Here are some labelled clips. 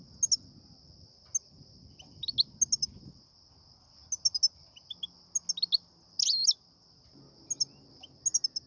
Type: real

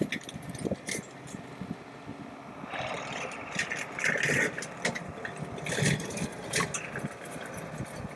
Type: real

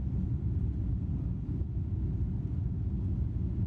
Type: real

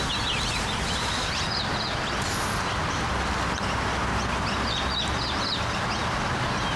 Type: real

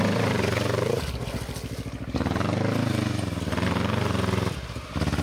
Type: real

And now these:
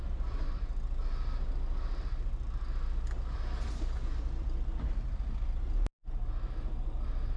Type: real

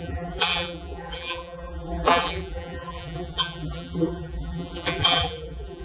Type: fake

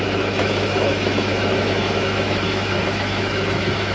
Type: fake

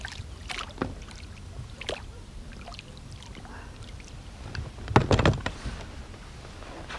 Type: real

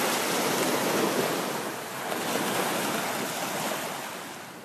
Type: real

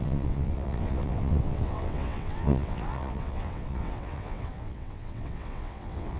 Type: fake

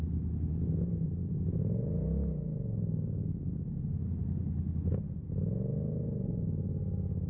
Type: real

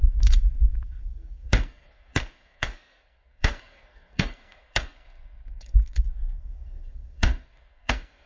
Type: fake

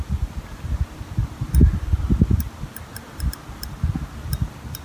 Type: real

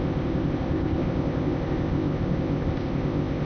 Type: fake